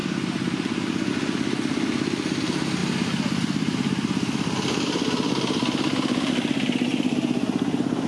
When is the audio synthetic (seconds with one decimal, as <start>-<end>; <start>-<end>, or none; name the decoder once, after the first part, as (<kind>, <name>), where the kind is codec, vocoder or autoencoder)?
0.0-1.1 (vocoder, BigVGAN v2); 2.8-6.3